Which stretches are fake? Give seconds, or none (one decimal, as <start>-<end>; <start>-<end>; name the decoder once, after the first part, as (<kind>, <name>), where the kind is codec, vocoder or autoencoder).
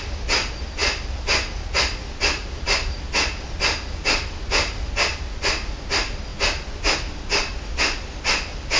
0.0-0.8 (vocoder, BigVGAN v2); 4.0-6.3; 6.8-8.8